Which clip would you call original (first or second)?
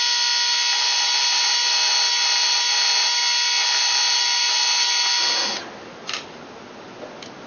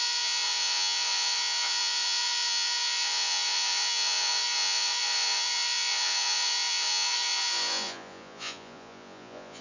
first